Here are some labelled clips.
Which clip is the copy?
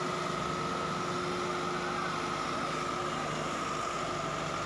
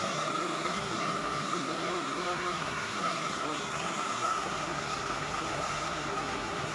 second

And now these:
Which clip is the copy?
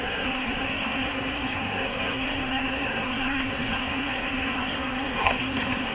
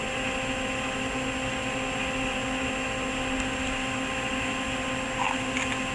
first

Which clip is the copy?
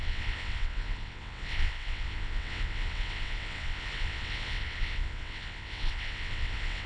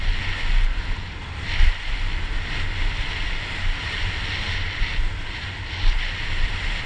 first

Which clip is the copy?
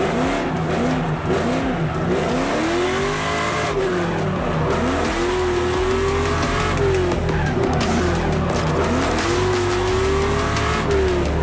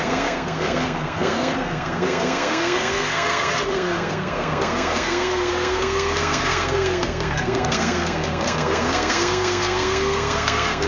second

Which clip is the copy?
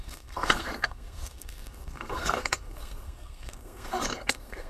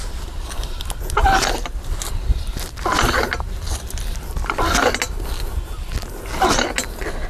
first